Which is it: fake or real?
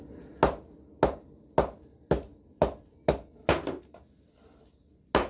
real